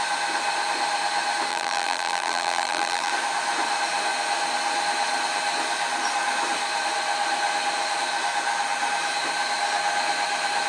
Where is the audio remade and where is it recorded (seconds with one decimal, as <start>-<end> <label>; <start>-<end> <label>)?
0.0-1.5 recorded; 1.5-3.1 remade; 3.1-10.7 recorded